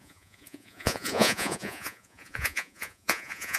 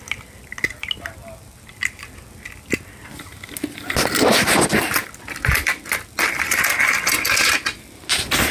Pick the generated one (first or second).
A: first